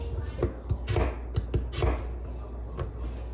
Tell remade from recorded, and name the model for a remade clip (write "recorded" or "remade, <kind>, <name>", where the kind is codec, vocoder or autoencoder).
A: recorded